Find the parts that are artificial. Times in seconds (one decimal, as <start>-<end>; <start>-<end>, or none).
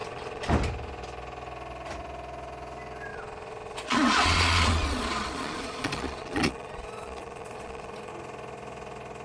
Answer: 0.0-0.5; 3.1-8.1